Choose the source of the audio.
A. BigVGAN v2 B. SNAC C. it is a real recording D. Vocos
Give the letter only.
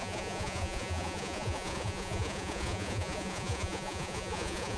D